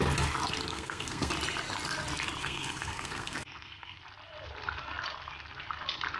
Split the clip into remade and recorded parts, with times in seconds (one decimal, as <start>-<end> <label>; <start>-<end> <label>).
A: 0.0-0.7 recorded; 0.7-1.3 remade; 1.3-2.4 recorded; 2.4-4.0 remade; 4.0-6.2 recorded